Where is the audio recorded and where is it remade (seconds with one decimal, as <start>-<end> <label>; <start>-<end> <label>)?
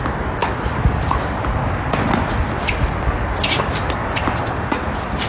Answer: 0.0-4.0 recorded; 4.0-4.8 remade; 4.8-5.3 recorded